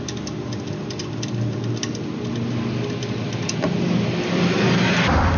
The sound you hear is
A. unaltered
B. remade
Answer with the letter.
A